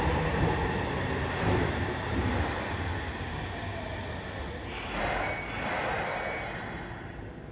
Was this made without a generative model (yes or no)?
yes